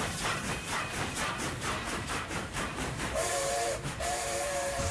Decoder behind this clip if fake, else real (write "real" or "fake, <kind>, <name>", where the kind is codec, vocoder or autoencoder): fake, vocoder, BigVGAN v2